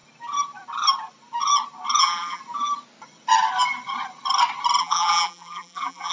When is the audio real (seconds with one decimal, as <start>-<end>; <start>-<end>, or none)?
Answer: 0.0-2.0; 2.4-4.8

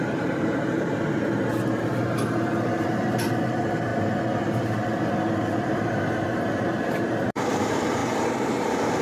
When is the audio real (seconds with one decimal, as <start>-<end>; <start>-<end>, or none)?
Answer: 3.9-5.1

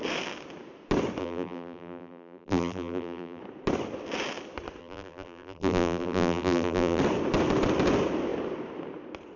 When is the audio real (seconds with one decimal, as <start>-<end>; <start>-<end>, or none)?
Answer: 0.0-1.2; 3.4-4.8; 7.0-9.4

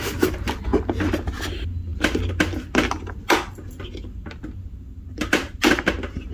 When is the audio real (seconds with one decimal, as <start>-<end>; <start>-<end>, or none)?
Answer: 0.0-6.3

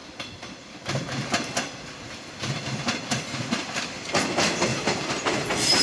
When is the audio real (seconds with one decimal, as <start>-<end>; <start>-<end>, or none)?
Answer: 0.0-4.7

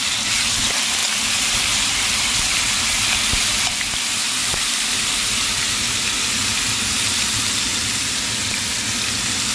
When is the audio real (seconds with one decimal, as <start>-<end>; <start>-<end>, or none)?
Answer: 0.0-1.0; 3.1-9.5

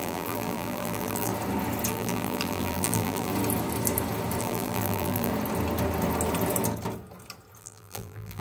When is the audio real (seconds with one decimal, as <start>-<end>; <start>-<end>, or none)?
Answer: 1.3-1.9; 3.3-4.4; 5.3-7.6